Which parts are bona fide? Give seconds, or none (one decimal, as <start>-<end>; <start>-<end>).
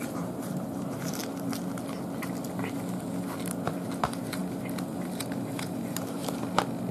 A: 1.2-4.0; 4.4-5.4; 6.2-6.9